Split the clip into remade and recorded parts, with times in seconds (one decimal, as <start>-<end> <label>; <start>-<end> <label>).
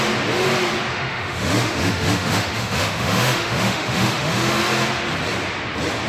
0.0-0.9 recorded; 0.9-4.6 remade; 4.6-6.1 recorded